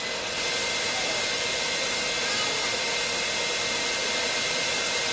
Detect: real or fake real